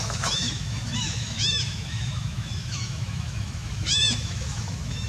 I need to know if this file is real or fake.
fake